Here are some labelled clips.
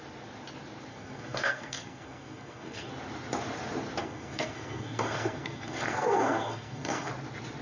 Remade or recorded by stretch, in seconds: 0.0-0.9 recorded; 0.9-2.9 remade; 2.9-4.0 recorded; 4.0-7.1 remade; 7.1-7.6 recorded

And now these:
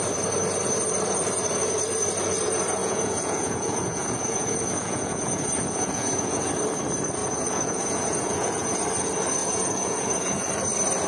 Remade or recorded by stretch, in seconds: 0.0-2.8 recorded; 2.8-6.5 remade; 6.5-7.2 recorded; 7.2-8.8 remade; 8.8-9.4 recorded; 9.4-10.5 remade; 10.5-11.1 recorded